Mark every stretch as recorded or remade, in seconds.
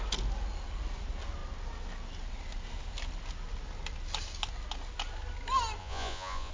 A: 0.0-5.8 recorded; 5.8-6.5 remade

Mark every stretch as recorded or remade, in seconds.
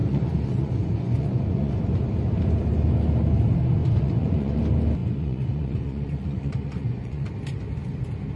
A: 0.0-1.7 remade; 1.7-3.8 recorded; 3.8-4.6 remade; 4.6-5.0 recorded; 5.0-7.3 remade; 7.3-8.4 recorded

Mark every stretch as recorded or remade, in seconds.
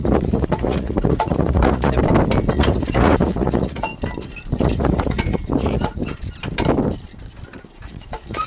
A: 0.0-2.0 remade; 2.0-2.5 recorded; 2.5-3.9 remade; 3.9-4.5 recorded; 4.5-6.0 remade; 6.0-7.6 recorded; 7.6-8.5 remade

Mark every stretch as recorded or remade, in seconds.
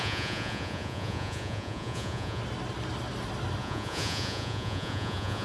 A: 0.0-2.4 remade; 2.4-3.6 recorded; 3.6-5.4 remade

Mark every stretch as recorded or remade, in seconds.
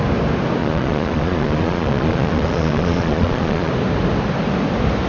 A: 0.0-0.6 recorded; 0.6-3.7 remade; 3.7-5.1 recorded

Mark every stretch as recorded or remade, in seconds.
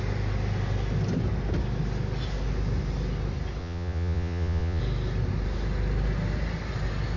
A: 0.0-3.6 recorded; 3.6-4.8 remade; 4.8-7.2 recorded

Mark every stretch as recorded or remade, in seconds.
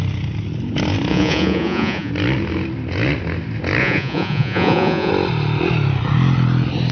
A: 0.0-1.1 recorded; 1.1-2.1 remade; 2.1-3.8 recorded; 3.8-5.1 remade; 5.1-6.9 recorded